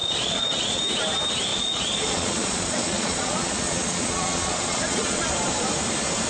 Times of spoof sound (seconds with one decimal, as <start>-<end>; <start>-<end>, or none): 0.0-0.8; 1.5-5.3